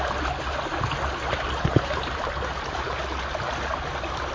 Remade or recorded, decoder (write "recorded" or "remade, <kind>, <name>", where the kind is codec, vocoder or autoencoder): recorded